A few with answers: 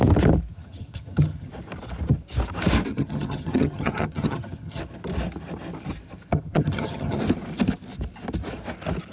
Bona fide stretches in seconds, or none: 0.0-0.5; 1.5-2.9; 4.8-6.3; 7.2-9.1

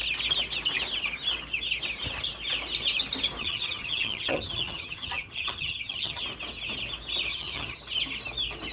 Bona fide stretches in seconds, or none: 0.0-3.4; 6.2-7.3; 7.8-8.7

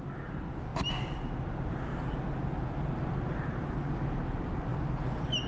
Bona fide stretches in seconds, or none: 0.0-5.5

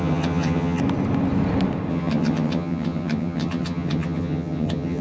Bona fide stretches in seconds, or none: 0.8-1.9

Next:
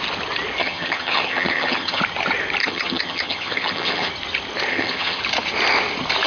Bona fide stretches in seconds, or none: 0.0-0.6; 2.0-2.6; 4.1-4.7; 5.2-6.3

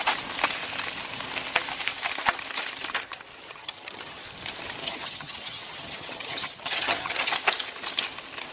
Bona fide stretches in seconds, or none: 0.0-3.4; 4.2-4.8; 7.3-8.5

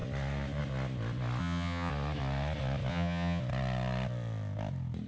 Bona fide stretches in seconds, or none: 0.0-1.4; 1.9-2.9; 3.4-5.1

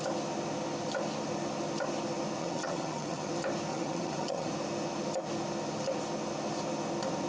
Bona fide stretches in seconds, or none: 0.0-2.4; 3.3-3.7; 4.5-7.3